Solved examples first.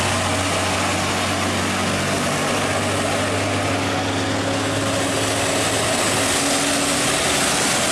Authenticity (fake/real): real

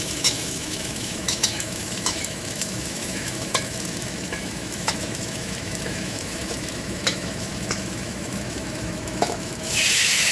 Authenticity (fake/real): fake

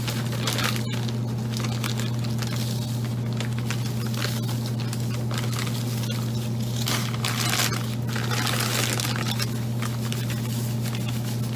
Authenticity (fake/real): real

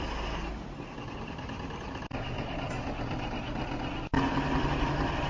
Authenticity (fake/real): fake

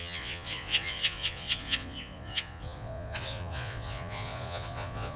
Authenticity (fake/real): fake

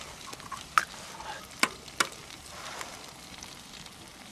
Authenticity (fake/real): fake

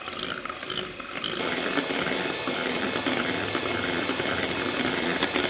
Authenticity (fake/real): fake